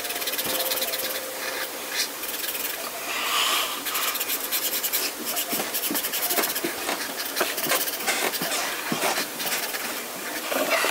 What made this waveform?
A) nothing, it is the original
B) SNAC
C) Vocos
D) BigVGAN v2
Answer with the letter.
D